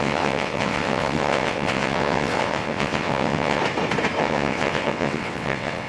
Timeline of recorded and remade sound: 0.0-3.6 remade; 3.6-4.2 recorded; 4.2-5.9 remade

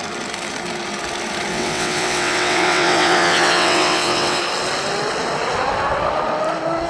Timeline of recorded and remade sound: 0.0-1.5 recorded; 1.5-4.4 remade; 4.4-6.9 recorded

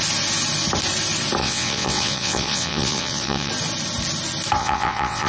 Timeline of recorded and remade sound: 0.0-1.4 recorded; 1.4-3.5 remade; 3.5-4.6 recorded; 4.6-5.3 remade

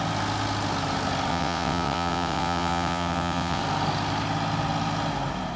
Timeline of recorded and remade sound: 0.0-1.3 recorded; 1.3-3.6 remade; 3.6-5.6 recorded

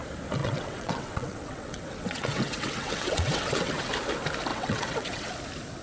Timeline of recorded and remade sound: 0.0-0.4 recorded; 0.4-3.9 remade; 3.9-4.5 recorded; 4.5-5.3 remade; 5.3-5.8 recorded

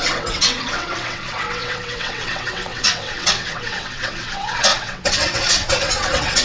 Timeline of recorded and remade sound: 0.0-6.4 remade

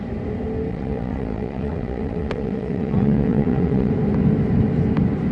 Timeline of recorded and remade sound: 0.0-0.7 recorded; 0.7-3.9 remade; 3.9-5.3 recorded

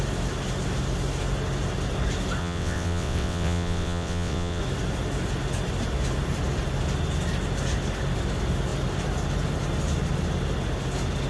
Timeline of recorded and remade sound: 0.0-2.4 recorded; 2.4-4.6 remade; 4.6-11.3 recorded